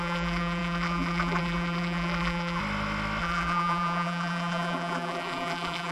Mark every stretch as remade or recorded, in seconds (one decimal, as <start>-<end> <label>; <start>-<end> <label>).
0.0-2.6 remade; 2.6-3.2 recorded; 3.2-5.9 remade

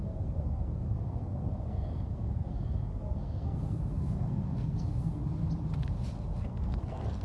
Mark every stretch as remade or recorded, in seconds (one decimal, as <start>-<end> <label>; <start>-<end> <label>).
0.0-5.2 remade; 5.2-6.4 recorded; 6.4-7.2 remade

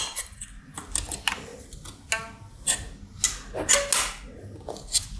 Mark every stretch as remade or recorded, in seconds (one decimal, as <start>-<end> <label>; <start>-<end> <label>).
0.0-5.2 recorded

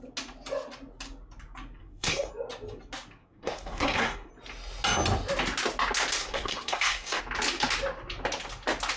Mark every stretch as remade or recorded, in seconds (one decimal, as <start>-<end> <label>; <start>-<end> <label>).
0.0-1.8 recorded; 1.8-2.3 remade; 2.3-3.2 recorded; 3.2-4.3 remade; 4.3-6.2 recorded; 6.2-7.2 remade; 7.2-9.0 recorded